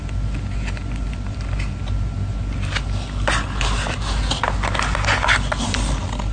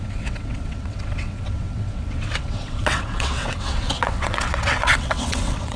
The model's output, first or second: second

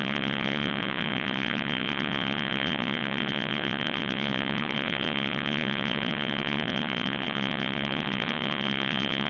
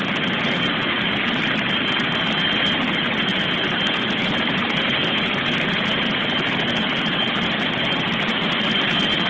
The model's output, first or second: first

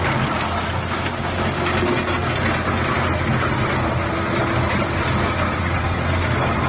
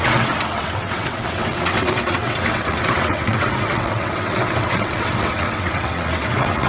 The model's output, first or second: second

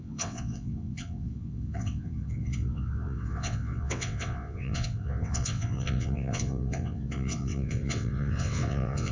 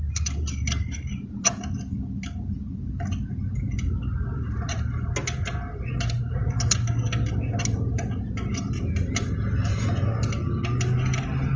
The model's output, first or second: first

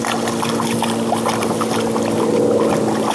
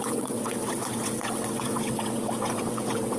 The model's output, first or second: second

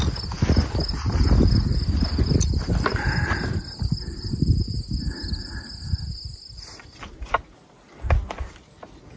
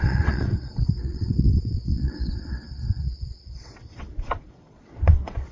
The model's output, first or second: second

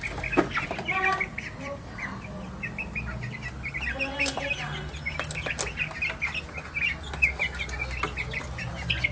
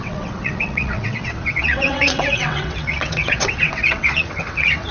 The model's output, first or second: second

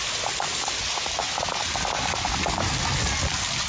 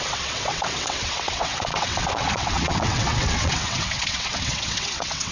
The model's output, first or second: second